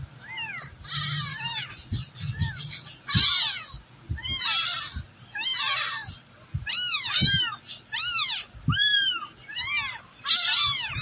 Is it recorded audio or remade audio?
recorded